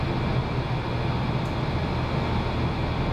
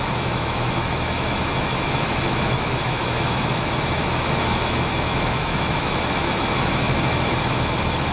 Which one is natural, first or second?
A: first